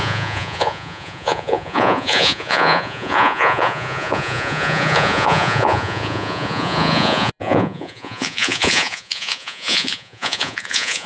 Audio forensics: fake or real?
fake